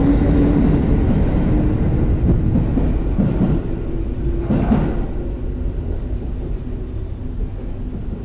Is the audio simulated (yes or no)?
no